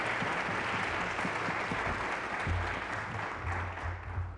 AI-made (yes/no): no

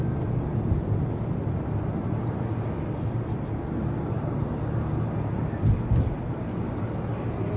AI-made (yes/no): no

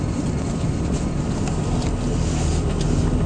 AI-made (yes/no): no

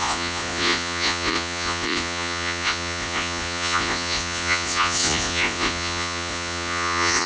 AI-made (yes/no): yes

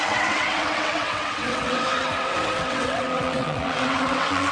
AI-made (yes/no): yes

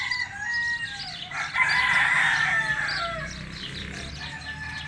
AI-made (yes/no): no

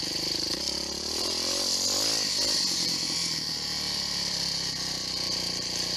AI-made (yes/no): yes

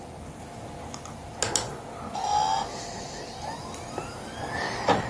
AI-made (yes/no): no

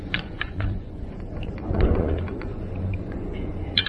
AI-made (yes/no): yes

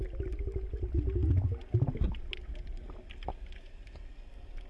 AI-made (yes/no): no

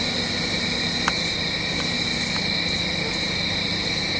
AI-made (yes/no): no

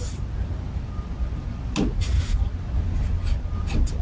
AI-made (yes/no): no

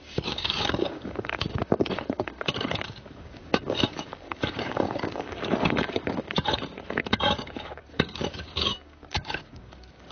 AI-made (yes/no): yes